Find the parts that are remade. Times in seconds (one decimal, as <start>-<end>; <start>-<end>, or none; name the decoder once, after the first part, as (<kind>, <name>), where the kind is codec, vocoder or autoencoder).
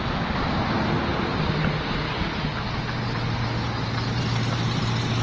none